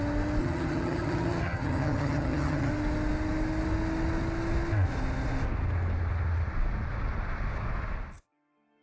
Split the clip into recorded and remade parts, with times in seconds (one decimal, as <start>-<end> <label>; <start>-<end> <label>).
0.0-0.4 recorded; 0.4-2.7 remade; 2.7-8.8 recorded